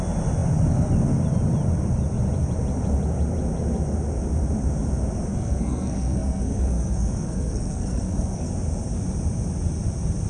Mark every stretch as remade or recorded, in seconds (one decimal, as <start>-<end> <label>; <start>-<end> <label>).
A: 0.0-5.3 recorded; 5.3-8.5 remade; 8.5-10.3 recorded